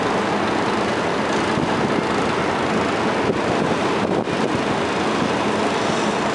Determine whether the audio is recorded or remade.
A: recorded